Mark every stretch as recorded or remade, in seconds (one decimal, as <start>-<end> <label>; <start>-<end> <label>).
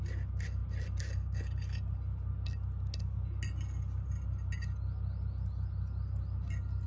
0.0-6.9 recorded